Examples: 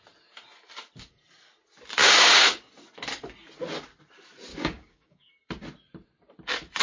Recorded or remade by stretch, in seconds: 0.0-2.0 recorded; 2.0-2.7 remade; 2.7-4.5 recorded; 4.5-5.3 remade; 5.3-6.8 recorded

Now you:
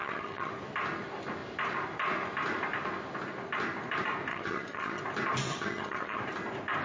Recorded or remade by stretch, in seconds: 0.0-0.5 remade; 0.5-4.3 recorded; 4.3-5.0 remade; 5.0-5.5 recorded; 5.5-6.2 remade; 6.2-6.8 recorded

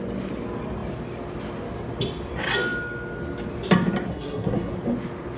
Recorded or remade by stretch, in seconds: 0.0-4.1 recorded; 4.1-4.7 remade; 4.7-5.4 recorded

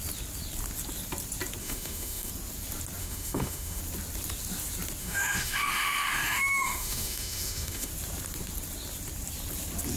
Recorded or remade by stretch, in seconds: 0.0-1.6 recorded; 1.6-2.3 remade; 2.3-3.0 recorded; 3.0-3.8 remade; 3.8-5.0 recorded; 5.0-7.9 remade; 7.9-10.0 recorded